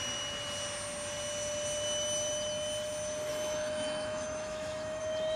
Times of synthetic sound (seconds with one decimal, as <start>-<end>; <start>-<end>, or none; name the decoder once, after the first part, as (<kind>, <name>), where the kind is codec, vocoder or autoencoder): 3.3-5.0 (autoencoder, DAC-VAE)